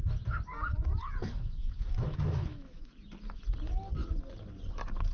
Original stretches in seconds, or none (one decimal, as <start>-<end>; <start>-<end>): 0.0-1.2; 2.9-5.1